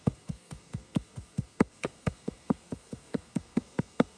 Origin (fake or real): fake